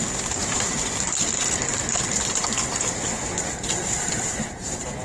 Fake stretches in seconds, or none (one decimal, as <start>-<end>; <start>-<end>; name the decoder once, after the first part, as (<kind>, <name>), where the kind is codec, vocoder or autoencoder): none